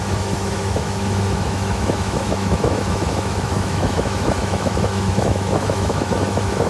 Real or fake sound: fake